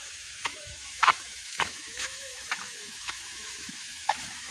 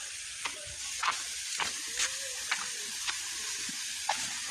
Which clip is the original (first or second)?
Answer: second